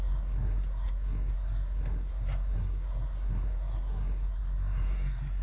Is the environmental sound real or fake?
fake